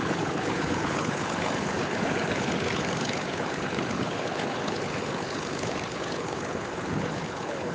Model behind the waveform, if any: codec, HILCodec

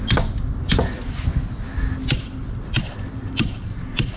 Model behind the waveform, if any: none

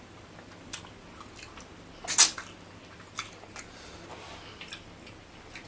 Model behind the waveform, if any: none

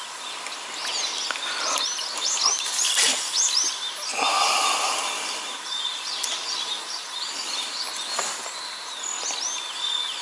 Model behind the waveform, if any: none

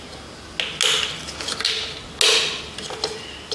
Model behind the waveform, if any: none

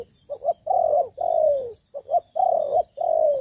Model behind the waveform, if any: vocoder, BigVGAN v2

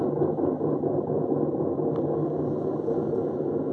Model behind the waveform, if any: none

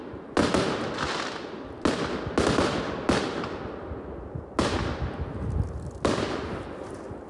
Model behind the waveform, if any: none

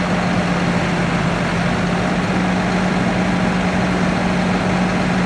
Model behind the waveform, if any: none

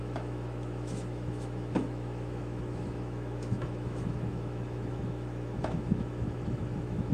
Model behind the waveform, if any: autoencoder, DAC-VAE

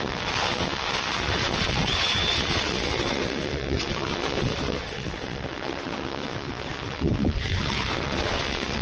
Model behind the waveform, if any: vocoder, WaveNeXt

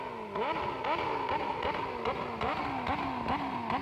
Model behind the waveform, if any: none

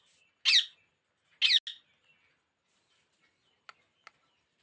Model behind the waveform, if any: none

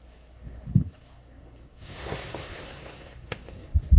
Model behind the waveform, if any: codec, SNAC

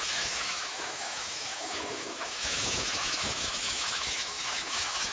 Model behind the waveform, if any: autoencoder, DAC-VAE